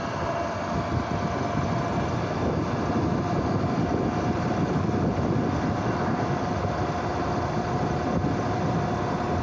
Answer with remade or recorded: recorded